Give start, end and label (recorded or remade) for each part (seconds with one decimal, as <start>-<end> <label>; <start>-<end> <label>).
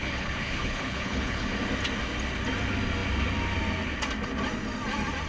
0.0-1.5 remade; 1.5-5.3 recorded